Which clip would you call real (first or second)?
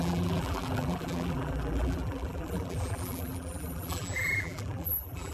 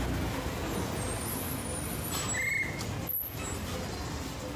second